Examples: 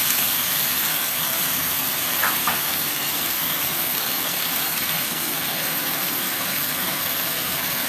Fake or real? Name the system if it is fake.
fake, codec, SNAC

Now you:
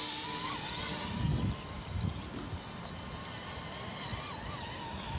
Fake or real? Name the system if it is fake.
real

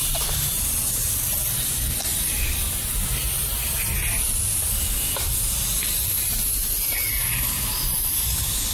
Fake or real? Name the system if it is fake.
real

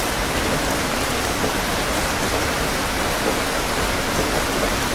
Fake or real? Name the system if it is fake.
fake, vocoder, BigVGAN v2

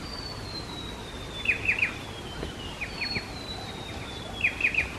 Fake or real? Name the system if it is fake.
real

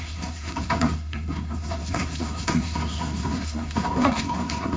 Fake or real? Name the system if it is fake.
fake, codec, SNAC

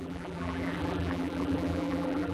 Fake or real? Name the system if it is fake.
fake, vocoder, BigVGAN v2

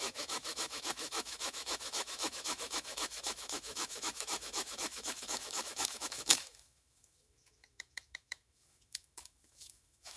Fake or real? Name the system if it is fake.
fake, autoencoder, DAC-VAE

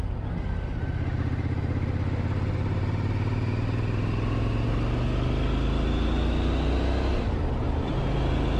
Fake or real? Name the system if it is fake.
real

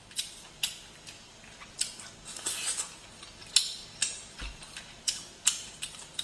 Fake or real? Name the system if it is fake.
real